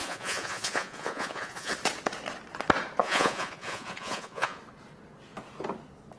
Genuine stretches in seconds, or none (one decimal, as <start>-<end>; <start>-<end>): 1.7-3.0; 4.6-6.2